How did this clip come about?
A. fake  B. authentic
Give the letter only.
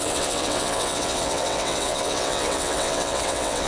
A